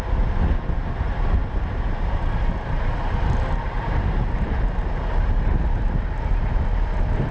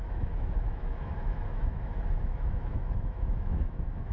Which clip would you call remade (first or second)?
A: second